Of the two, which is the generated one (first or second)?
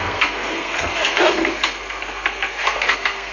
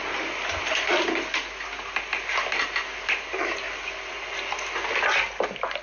first